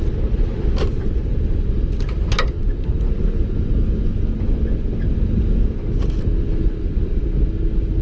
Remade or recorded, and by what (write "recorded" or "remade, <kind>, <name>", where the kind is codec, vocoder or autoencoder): recorded